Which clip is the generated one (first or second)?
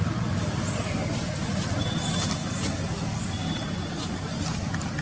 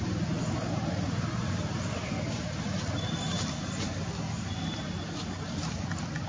second